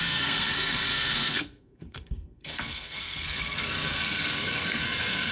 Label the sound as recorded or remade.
remade